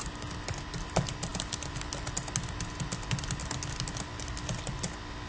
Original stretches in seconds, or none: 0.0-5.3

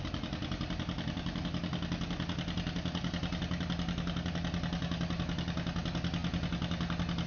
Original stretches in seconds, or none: 0.0-7.3

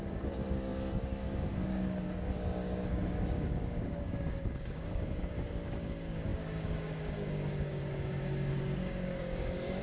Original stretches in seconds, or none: none